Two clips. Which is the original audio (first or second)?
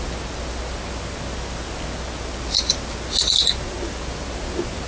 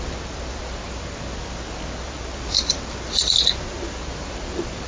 first